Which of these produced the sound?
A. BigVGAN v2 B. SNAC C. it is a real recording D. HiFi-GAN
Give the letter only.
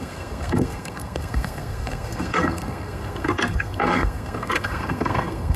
B